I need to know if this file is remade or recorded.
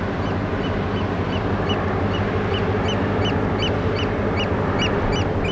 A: recorded